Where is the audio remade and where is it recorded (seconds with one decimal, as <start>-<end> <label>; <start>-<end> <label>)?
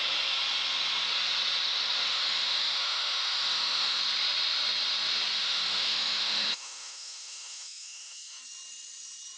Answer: 0.0-2.1 recorded; 2.1-4.0 remade; 4.0-5.4 recorded; 5.4-8.4 remade; 8.4-9.4 recorded